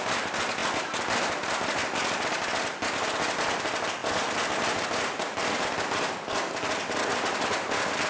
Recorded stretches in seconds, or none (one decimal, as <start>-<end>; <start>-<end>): 0.0-8.1